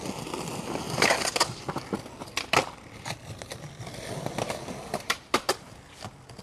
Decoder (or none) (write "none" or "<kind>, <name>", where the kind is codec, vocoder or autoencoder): none